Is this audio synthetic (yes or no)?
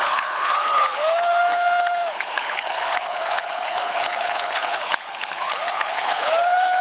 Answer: yes